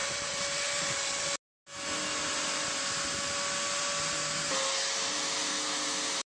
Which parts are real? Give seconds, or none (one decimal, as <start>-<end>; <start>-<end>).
0.0-6.3